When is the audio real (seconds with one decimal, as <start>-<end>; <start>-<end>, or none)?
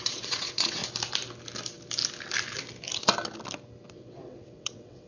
0.8-3.9